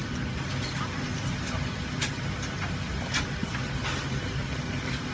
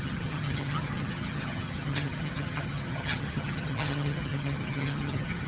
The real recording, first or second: first